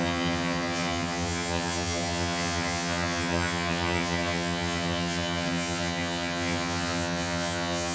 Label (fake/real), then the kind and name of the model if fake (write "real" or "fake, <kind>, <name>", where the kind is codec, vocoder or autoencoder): fake, vocoder, HiFi-GAN